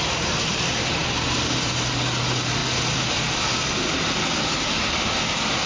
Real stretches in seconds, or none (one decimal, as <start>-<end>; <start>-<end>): 0.0-5.7